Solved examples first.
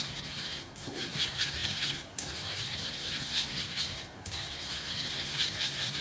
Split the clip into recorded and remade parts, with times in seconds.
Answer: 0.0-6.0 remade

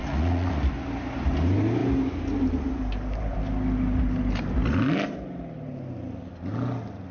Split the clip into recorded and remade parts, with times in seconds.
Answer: 0.0-0.5 remade; 0.5-7.1 recorded